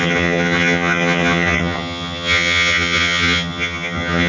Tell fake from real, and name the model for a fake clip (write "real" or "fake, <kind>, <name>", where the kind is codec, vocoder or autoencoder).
fake, vocoder, HiFi-GAN